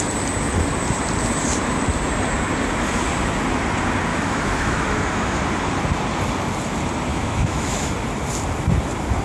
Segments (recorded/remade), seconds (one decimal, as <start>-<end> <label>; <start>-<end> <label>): 0.0-4.1 recorded; 4.1-5.4 remade; 5.4-7.1 recorded; 7.1-7.9 remade; 7.9-9.2 recorded